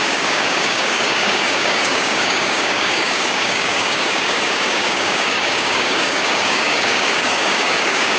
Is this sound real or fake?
fake